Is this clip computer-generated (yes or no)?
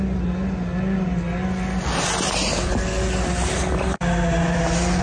no